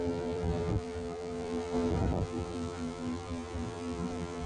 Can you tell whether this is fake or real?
fake